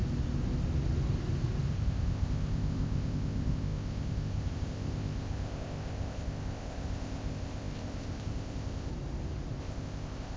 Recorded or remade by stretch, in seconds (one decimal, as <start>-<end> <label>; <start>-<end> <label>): 0.0-1.7 recorded; 1.7-8.9 remade; 8.9-9.6 recorded; 9.6-10.4 remade